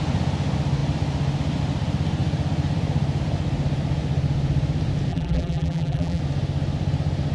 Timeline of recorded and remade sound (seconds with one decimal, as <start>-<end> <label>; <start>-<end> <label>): 0.0-5.1 recorded; 5.1-6.2 remade; 6.2-7.3 recorded